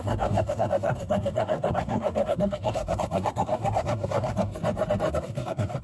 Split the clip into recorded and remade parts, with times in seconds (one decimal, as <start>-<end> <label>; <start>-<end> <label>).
0.0-4.5 remade; 4.5-5.1 recorded; 5.1-5.8 remade